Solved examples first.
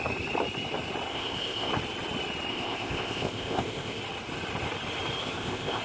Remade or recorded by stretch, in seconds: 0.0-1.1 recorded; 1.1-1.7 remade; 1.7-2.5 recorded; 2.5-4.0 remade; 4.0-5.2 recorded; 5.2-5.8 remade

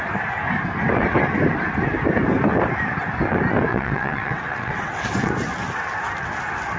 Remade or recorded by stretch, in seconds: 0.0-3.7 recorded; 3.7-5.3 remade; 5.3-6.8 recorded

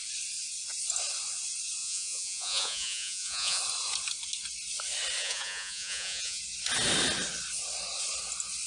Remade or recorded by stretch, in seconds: 0.0-1.8 recorded; 1.8-3.6 remade; 3.6-5.2 recorded; 5.2-6.4 remade; 6.4-8.7 recorded

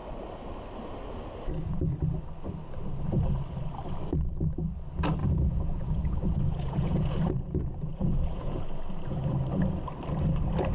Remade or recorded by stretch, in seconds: 0.0-5.2 recorded; 5.2-8.6 remade; 8.6-10.7 recorded

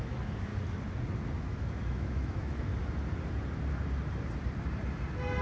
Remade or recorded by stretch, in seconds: 0.0-0.5 remade; 0.5-1.4 recorded; 1.4-2.7 remade; 2.7-5.4 recorded

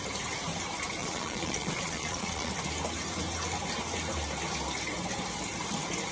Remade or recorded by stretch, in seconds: 0.0-1.0 recorded; 1.0-2.5 remade; 2.5-6.1 recorded

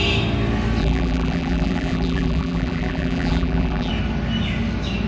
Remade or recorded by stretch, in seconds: 0.0-0.8 recorded; 0.8-3.9 remade; 3.9-5.1 recorded